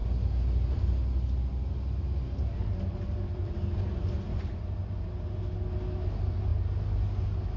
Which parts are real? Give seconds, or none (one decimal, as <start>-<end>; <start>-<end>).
0.0-2.6; 4.5-7.6